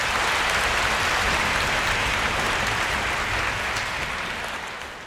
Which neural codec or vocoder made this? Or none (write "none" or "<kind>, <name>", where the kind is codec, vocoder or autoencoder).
none